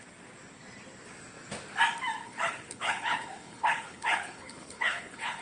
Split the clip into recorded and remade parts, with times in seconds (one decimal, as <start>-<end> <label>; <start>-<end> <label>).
0.0-2.2 recorded; 2.2-5.4 remade